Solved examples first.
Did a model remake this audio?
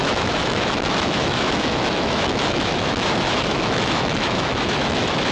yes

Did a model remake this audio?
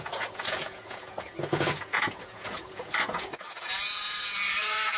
yes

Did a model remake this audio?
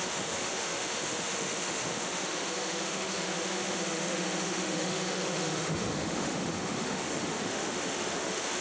yes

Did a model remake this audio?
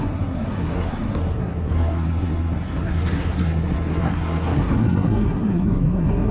yes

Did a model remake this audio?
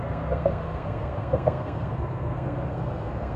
yes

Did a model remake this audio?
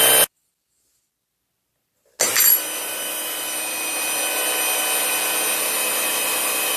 no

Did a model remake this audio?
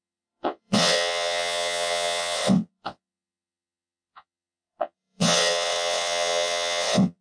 yes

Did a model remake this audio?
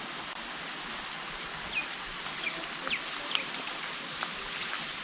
no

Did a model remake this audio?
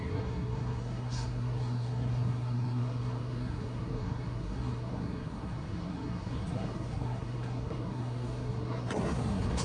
yes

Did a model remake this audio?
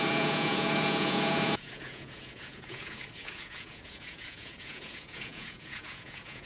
yes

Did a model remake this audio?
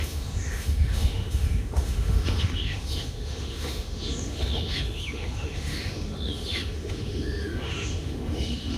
yes